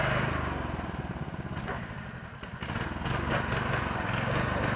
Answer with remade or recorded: recorded